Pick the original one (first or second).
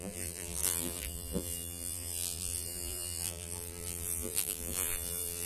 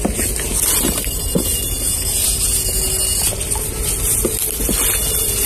second